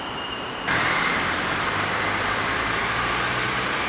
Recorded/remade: remade